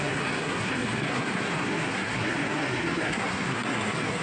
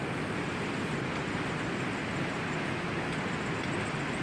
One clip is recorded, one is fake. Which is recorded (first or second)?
second